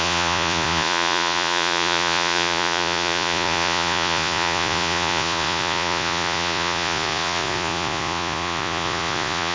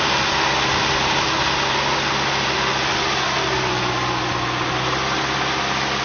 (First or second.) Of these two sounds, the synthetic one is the first